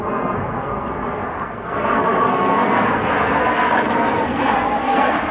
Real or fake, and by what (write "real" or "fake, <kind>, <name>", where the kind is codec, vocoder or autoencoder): fake, codec, SNAC